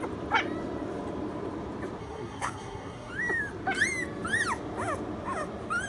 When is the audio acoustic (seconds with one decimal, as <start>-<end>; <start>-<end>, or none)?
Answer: 0.0-2.0; 3.1-5.9